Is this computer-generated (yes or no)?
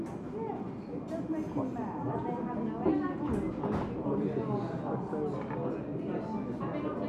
no